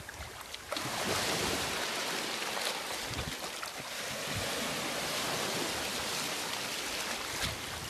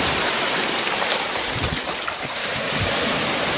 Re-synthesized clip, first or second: second